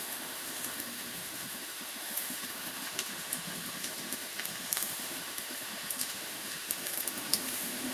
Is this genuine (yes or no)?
no